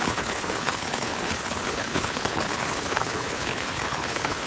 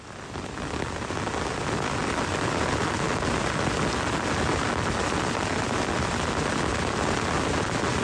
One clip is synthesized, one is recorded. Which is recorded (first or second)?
second